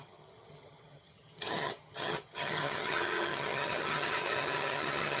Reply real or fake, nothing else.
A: fake